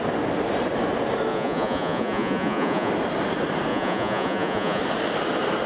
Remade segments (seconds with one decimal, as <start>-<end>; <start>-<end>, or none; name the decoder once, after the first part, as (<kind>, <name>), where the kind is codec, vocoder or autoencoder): 1.3-2.9 (vocoder, Vocos); 3.7-4.8